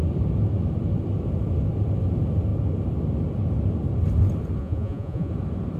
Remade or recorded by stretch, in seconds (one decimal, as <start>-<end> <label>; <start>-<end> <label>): 0.0-4.6 recorded; 4.6-5.3 remade; 5.3-5.8 recorded